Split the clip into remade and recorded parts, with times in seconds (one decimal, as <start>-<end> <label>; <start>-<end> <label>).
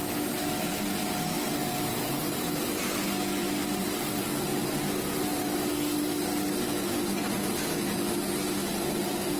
0.0-9.4 recorded